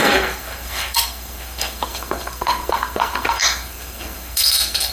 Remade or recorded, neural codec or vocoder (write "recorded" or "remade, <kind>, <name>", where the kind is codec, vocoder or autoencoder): remade, codec, SNAC